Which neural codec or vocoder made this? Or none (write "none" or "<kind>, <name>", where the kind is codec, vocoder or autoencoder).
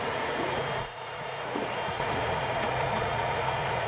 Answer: vocoder, Vocos